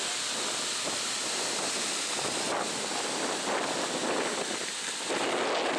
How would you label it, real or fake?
real